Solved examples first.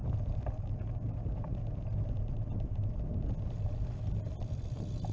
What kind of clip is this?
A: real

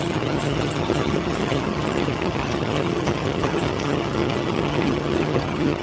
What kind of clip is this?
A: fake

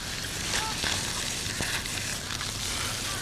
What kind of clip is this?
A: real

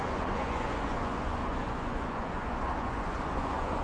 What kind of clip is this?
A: fake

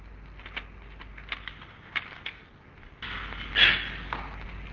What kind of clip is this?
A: real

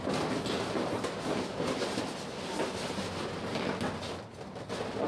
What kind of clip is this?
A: real